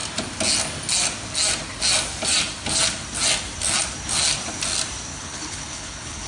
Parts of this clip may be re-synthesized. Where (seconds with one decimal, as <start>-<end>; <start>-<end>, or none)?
5.1-6.3